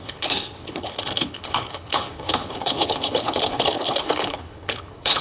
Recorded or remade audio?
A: remade